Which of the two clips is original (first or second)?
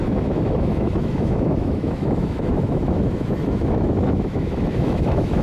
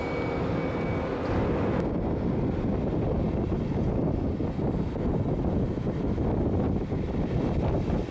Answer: second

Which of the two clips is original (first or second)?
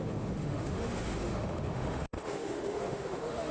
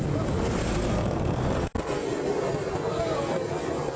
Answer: second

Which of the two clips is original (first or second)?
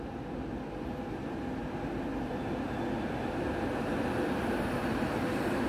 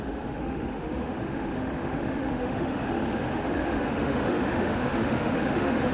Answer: first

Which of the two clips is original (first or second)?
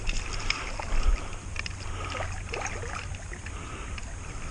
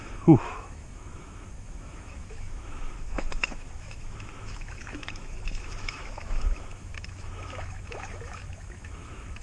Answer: first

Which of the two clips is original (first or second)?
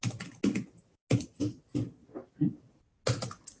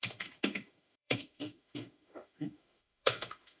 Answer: first